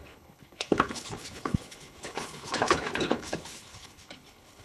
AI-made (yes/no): yes